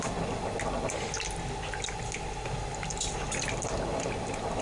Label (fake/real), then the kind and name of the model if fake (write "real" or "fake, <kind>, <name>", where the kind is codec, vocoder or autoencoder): real